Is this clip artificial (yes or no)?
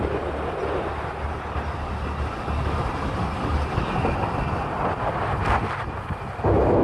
no